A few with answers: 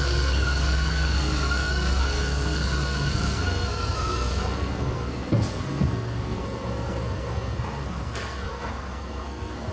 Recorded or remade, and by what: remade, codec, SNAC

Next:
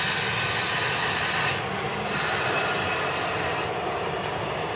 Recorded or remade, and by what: recorded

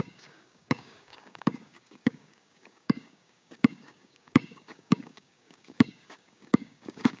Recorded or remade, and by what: remade, codec, DAC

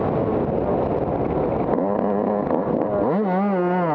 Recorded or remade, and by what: recorded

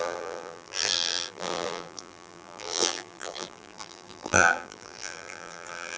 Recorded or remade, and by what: remade, vocoder, BigVGAN v2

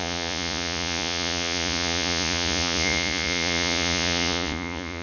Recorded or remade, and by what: remade, vocoder, Vocos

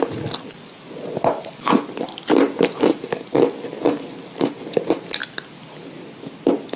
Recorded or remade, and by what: recorded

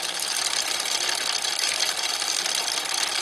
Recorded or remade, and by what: remade, vocoder, BigVGAN v2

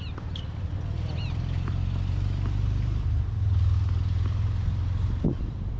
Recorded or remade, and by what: recorded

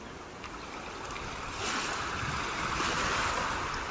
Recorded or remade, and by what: recorded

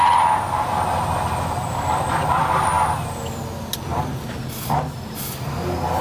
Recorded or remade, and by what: recorded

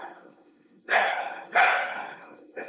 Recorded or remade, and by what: remade, codec, SNAC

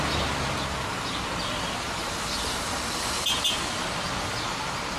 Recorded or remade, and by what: recorded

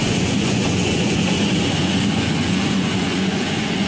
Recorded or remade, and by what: remade, vocoder, Vocos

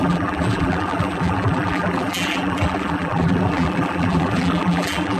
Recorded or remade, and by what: remade, vocoder, BigVGAN v2